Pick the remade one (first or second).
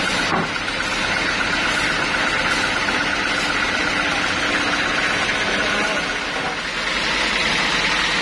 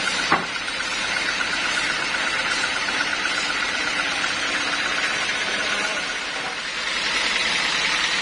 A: second